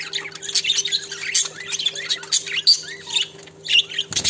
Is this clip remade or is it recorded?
recorded